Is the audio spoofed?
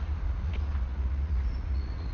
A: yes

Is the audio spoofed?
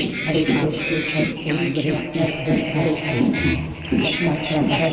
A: no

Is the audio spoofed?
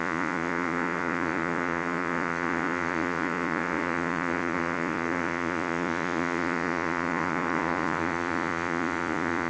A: yes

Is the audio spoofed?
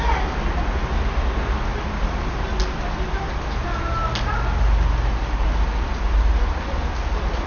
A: no